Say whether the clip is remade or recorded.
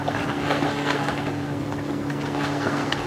remade